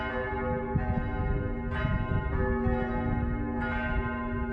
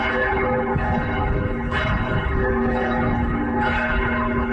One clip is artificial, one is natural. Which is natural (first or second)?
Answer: first